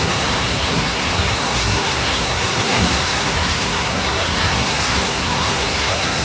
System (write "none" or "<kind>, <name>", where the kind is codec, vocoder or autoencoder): codec, SNAC